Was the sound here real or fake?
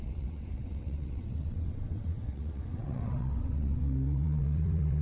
fake